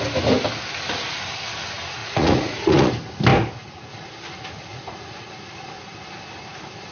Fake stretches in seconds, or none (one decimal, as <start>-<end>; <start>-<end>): 2.0-2.9; 4.7-5.3